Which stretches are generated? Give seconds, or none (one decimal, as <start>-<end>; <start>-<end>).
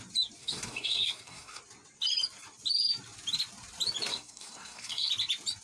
0.4-1.6; 4.1-5.1